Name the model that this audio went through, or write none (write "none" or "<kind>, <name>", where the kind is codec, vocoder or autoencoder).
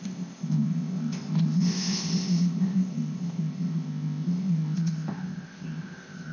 codec, ZipCodec